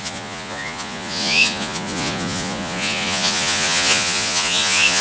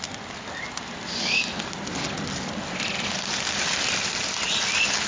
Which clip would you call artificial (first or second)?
first